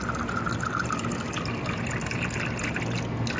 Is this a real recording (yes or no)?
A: yes